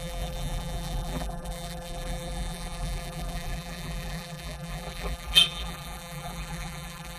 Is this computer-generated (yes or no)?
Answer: yes